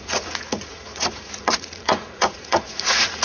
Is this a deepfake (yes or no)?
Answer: yes